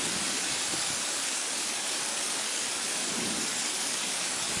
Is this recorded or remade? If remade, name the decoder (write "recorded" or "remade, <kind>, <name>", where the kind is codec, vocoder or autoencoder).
remade, codec, DAC